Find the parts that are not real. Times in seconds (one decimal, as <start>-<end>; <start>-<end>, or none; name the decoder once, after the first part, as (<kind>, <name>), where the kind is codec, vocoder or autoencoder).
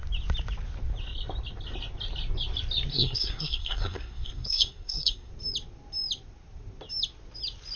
2.9-5.3 (codec, SNAC)